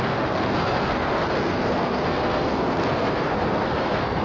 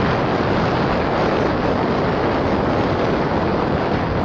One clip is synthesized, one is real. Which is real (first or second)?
second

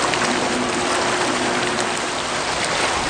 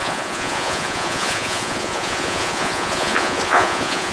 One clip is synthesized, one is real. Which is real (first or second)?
first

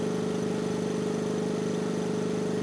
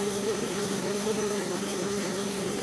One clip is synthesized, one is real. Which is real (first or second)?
first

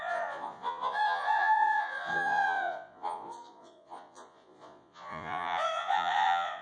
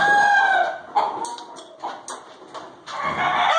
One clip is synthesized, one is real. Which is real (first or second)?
second